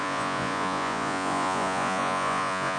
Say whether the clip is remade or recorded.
remade